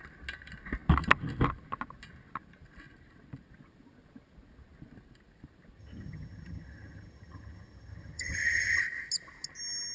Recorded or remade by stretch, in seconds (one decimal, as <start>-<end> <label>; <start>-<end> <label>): 0.0-5.8 recorded; 5.8-8.8 remade; 8.8-9.9 recorded